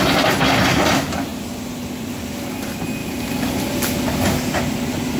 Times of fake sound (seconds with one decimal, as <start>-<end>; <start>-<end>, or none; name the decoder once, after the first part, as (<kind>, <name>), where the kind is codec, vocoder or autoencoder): 3.0-4.3 (vocoder, BigVGAN v2)